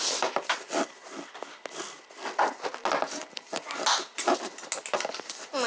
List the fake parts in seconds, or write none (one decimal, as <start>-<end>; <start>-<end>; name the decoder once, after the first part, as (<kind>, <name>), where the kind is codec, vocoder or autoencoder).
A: none